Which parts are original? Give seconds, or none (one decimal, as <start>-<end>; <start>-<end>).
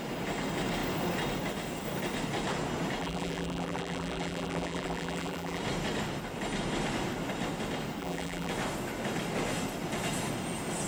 0.0-3.0; 5.6-8.0; 8.5-10.9